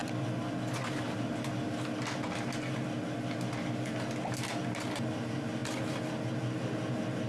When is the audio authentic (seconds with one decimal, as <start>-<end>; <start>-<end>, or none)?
0.0-7.3